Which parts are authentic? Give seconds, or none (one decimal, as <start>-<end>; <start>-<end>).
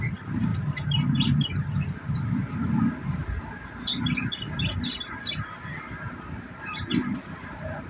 0.0-7.9